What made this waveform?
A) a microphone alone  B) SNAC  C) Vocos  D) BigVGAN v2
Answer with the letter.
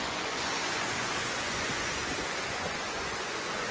C